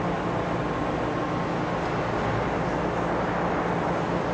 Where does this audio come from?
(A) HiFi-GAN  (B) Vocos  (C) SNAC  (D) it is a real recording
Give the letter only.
D